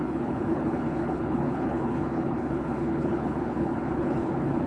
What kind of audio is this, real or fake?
fake